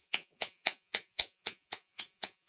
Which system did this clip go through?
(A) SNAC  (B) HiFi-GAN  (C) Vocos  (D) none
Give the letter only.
C